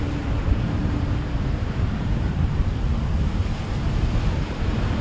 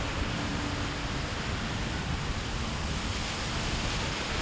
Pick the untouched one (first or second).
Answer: second